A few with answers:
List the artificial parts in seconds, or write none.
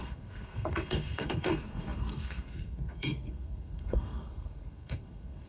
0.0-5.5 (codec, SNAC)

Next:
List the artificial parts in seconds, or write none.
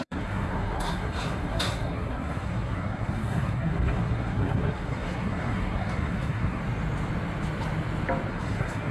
0.0-6.6 (codec, SNAC); 8.3-8.9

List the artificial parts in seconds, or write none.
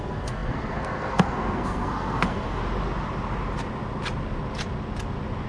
0.0-2.6 (codec, SNAC)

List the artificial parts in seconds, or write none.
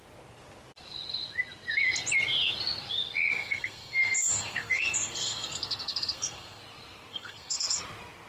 3.3-6.6 (codec, SNAC); 7.1-7.8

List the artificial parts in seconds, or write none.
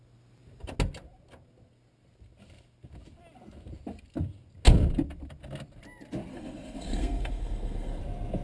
6.3-8.0 (codec, SNAC)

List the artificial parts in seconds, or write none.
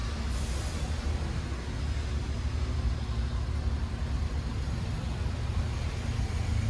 none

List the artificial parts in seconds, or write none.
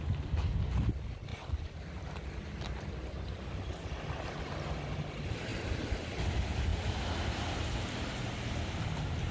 none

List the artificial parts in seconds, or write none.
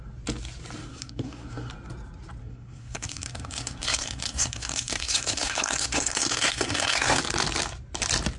0.9-1.7 (codec, SNAC); 2.4-7.2